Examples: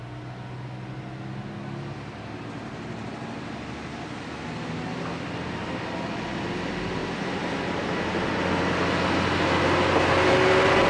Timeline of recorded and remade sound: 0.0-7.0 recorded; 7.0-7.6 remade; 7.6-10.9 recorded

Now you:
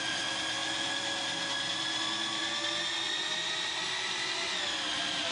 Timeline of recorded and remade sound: 0.0-5.3 recorded